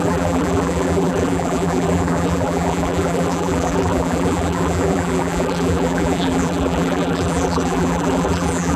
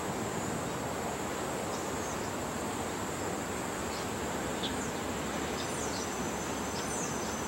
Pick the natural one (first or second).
second